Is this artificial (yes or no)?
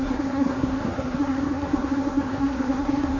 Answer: yes